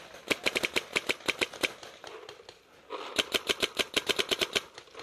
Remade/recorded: recorded